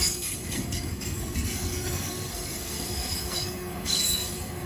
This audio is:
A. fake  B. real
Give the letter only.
A